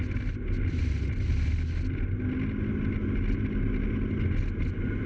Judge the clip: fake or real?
real